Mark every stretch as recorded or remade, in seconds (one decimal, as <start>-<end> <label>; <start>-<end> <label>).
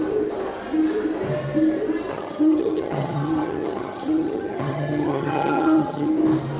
0.0-2.1 recorded; 2.1-6.1 remade; 6.1-6.6 recorded